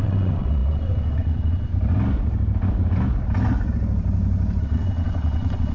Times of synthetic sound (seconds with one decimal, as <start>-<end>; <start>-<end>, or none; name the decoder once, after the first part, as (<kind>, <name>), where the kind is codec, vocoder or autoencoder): 0.0-1.7 (vocoder, WaveNeXt); 4.6-5.7

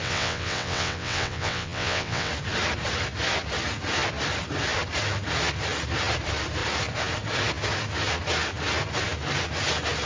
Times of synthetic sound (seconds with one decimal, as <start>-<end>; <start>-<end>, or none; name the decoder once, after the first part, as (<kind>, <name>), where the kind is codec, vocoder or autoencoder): 0.0-2.3 (vocoder, WaveNeXt)

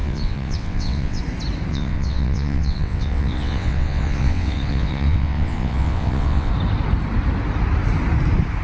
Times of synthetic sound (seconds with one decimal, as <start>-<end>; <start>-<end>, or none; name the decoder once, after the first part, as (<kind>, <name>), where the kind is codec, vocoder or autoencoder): 0.0-1.2 (vocoder, WaveNeXt); 1.7-6.5

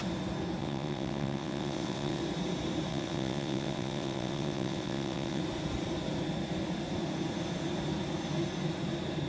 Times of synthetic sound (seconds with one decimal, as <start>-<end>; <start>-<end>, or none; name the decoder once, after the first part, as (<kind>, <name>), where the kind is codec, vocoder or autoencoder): 0.6-2.2 (vocoder, WaveNeXt); 2.9-5.4

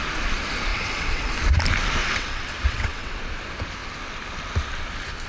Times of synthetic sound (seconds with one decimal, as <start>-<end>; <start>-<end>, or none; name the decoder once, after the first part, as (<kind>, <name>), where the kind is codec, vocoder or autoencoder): 0.7-1.3 (vocoder, WaveNeXt); 2.0-3.2